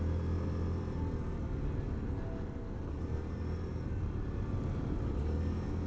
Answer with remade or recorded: recorded